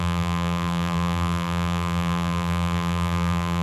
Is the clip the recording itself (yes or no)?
no